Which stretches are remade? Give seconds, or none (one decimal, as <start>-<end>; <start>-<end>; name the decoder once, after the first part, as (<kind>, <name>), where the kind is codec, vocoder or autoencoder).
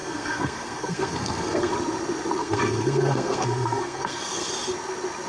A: 0.0-1.7 (codec, SNAC); 2.4-4.5